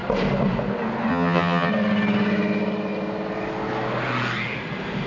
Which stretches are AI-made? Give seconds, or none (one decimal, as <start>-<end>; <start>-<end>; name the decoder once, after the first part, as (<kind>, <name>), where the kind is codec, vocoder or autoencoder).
1.1-1.7 (vocoder, HiFi-GAN)